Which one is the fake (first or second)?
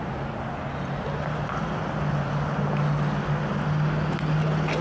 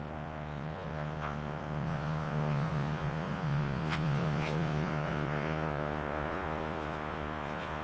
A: second